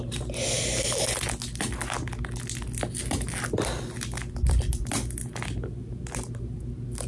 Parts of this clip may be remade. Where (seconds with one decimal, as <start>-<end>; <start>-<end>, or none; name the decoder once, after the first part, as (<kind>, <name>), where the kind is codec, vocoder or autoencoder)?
5.8-6.6 (vocoder, BigVGAN v2)